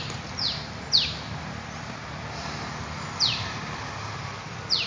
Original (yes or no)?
yes